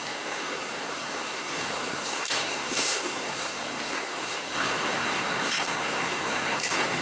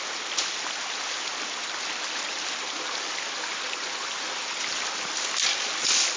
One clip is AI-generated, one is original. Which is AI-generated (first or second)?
first